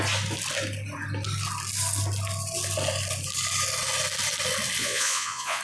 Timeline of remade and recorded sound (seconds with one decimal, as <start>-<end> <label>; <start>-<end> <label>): 0.0-4.8 recorded; 4.8-5.6 remade